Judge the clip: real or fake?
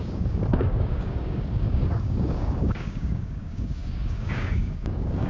fake